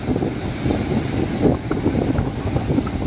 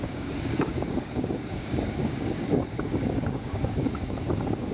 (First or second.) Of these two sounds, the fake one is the second